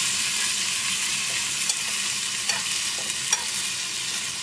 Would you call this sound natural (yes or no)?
yes